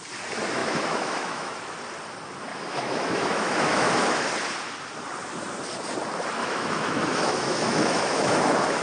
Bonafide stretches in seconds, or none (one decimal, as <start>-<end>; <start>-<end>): 0.0-0.6; 1.5-2.5; 4.3-6.4